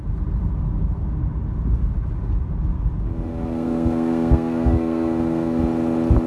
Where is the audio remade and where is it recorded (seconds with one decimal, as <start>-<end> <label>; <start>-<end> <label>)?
0.0-3.3 recorded; 3.3-5.6 remade; 5.6-6.3 recorded